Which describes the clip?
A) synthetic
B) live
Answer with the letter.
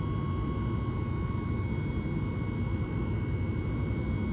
B